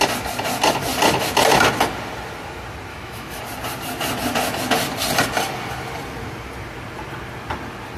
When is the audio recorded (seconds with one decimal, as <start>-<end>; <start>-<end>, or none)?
0.0-2.9; 3.4-8.0